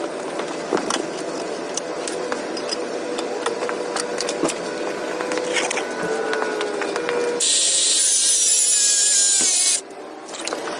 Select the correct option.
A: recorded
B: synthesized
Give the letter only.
A